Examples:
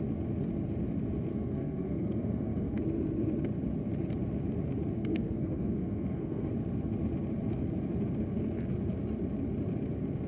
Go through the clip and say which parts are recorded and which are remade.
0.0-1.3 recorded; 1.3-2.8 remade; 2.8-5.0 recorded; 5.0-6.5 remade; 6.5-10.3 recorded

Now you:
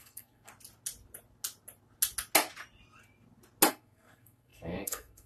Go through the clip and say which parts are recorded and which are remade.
0.0-0.5 remade; 0.5-3.7 recorded; 3.7-5.3 remade

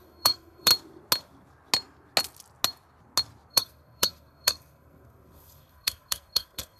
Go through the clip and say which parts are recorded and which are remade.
0.0-0.7 remade; 0.7-3.5 recorded; 3.5-6.8 remade

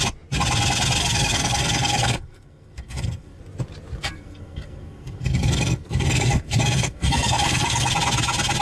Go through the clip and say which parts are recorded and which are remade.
0.0-1.0 recorded; 1.0-3.4 remade; 3.4-4.0 recorded; 4.0-7.9 remade; 7.9-8.6 recorded

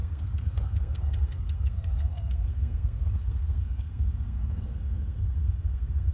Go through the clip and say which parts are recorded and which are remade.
0.0-6.1 remade

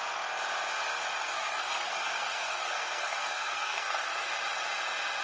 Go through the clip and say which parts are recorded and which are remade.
0.0-1.2 recorded; 1.2-4.3 remade; 4.3-5.2 recorded

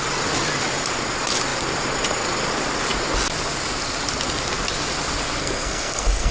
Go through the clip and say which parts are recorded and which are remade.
0.0-5.4 recorded; 5.4-6.3 remade